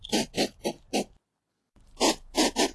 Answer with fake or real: real